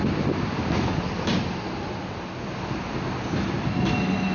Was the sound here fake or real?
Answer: real